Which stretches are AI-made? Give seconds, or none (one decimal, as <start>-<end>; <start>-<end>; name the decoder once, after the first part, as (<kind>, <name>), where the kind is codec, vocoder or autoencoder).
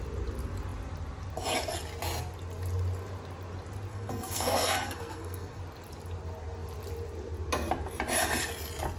3.9-5.6 (codec, SNAC)